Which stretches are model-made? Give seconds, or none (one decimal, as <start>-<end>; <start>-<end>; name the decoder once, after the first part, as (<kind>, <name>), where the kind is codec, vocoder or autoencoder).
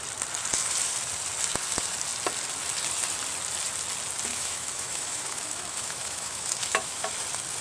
4.3-7.1 (autoencoder, DAC-VAE)